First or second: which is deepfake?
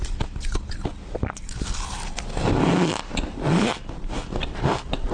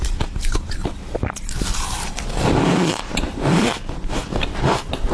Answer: second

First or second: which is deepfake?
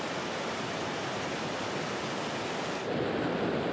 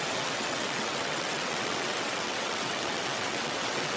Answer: second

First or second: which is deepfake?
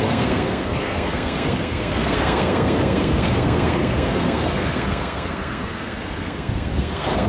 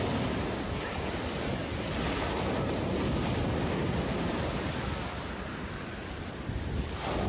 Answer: first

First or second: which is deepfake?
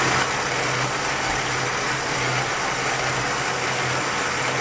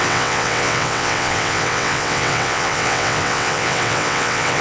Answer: second